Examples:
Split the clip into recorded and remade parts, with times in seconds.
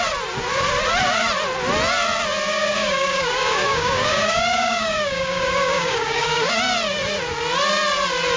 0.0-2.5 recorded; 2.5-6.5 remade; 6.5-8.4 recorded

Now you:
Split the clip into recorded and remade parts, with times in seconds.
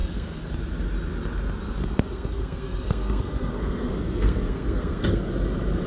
0.0-0.5 remade; 0.5-1.8 recorded; 1.8-5.3 remade; 5.3-5.9 recorded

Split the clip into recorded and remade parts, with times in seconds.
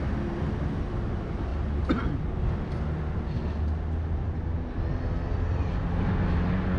0.0-6.8 recorded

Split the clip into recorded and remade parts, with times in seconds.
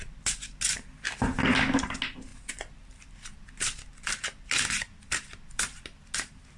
0.0-6.6 recorded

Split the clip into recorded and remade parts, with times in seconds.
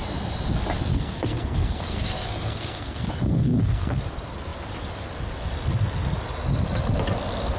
0.0-0.9 recorded; 0.9-4.0 remade; 4.0-7.6 recorded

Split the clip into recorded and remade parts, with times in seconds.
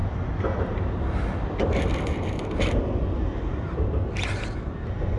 0.0-5.2 recorded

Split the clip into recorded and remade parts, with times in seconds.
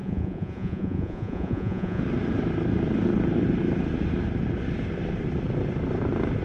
0.0-2.0 remade; 2.0-6.4 recorded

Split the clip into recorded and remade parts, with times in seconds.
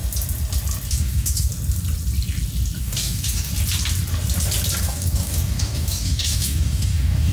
0.0-0.9 recorded; 0.9-1.5 remade; 1.5-2.8 recorded; 2.8-3.5 remade; 3.5-4.8 recorded; 4.8-7.3 remade